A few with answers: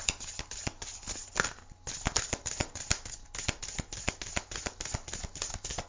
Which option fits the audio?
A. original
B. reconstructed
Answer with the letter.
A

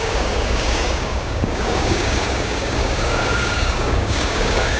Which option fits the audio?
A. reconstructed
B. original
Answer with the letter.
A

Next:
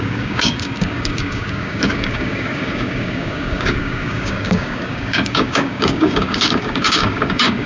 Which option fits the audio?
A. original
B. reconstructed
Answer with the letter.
B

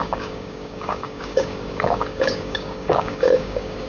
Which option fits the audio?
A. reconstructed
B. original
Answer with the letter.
A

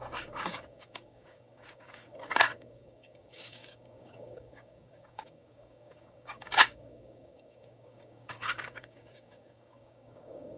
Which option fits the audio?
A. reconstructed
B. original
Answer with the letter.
A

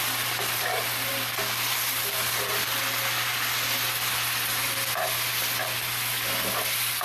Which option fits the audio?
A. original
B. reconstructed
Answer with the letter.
A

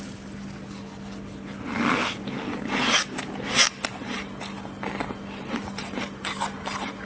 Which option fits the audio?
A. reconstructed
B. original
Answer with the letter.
B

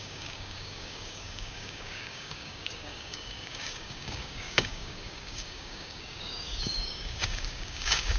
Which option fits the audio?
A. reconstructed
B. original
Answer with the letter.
A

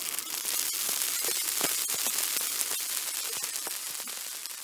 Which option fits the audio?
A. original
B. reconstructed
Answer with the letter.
A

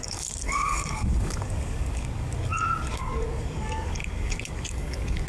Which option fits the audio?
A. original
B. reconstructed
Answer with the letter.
B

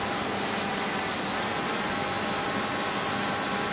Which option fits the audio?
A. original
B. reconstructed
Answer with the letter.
A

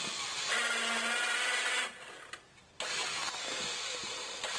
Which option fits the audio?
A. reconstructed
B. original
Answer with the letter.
B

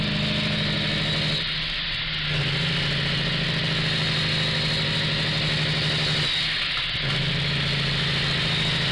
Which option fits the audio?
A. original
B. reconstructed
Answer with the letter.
A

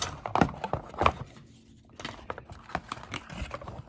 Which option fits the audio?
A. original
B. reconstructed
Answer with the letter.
A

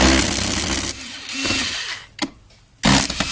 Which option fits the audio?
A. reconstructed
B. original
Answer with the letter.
B